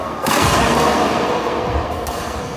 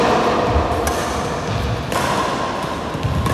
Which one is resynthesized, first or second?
first